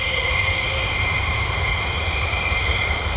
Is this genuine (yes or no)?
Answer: no